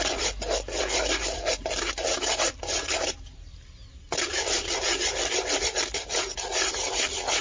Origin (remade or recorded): remade